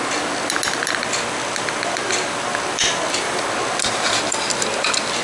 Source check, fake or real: real